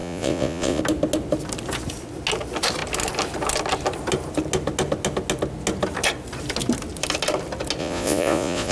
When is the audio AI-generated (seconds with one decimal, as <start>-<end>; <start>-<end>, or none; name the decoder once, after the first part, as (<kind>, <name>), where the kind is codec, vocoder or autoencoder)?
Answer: 0.0-0.8 (vocoder, Vocos); 7.8-8.7